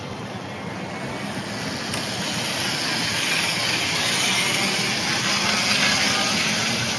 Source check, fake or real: real